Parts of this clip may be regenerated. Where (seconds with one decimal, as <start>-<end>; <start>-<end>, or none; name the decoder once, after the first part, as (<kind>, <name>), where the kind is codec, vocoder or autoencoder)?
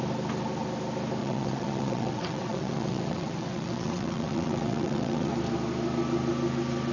1.2-5.3 (vocoder, WaveNeXt)